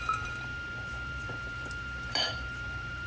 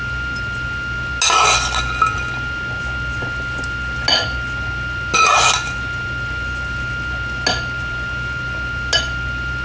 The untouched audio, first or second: second